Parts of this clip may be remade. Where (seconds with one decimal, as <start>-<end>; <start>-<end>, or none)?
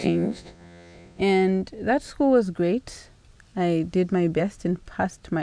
0.0-1.2